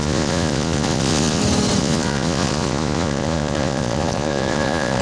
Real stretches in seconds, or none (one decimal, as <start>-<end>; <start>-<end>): 1.4-1.8